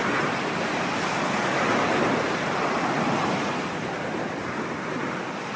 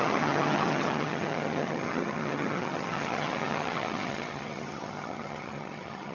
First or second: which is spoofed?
second